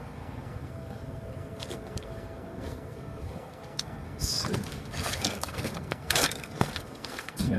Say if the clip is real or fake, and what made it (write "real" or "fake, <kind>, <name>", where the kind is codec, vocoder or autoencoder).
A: fake, codec, SNAC